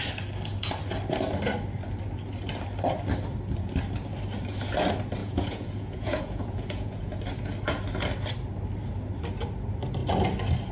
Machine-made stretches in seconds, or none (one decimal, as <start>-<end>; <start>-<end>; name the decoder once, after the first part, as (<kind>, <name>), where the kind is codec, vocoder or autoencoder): 5.2-7.2 (vocoder, Vocos)